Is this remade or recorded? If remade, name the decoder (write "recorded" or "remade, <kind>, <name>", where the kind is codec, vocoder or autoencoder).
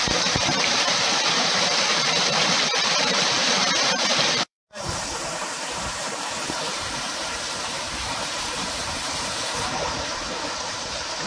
remade, vocoder, BigVGAN v2